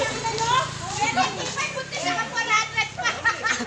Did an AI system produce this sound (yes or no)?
no